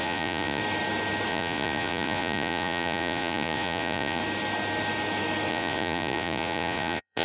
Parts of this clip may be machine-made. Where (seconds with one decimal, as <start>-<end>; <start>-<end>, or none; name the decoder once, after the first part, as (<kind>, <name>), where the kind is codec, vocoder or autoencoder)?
0.0-0.6 (vocoder, Vocos); 1.3-4.2; 5.5-7.2